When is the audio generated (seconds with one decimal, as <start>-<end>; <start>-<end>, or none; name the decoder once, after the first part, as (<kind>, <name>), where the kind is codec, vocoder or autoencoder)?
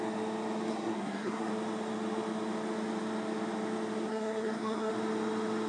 0.7-1.5 (codec, SNAC); 4.1-4.9